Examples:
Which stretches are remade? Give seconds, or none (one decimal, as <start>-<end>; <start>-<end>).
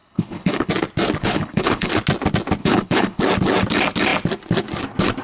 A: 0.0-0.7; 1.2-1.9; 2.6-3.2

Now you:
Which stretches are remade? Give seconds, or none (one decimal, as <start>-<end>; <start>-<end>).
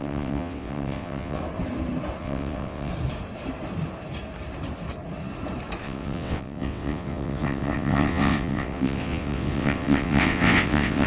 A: 0.0-1.4; 2.2-2.9; 5.8-11.1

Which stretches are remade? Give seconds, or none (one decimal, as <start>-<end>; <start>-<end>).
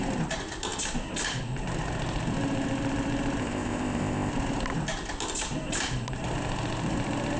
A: 3.4-4.3